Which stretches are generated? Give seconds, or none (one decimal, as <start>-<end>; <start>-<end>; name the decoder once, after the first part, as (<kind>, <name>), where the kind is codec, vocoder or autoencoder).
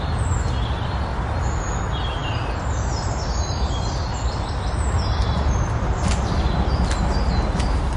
1.1-1.8 (vocoder, BigVGAN v2); 2.2-6.1